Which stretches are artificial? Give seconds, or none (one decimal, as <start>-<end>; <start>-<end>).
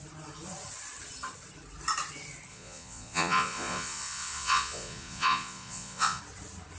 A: 2.5-6.2